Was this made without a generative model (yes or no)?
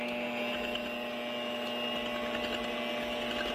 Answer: yes